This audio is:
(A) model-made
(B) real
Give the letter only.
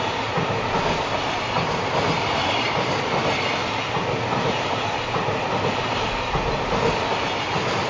B